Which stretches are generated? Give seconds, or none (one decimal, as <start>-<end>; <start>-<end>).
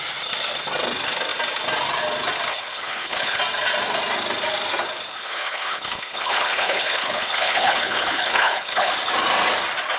2.5-3.4; 5.1-8.9